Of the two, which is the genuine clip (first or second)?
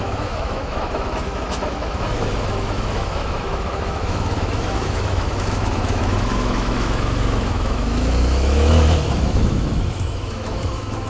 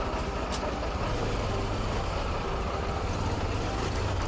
second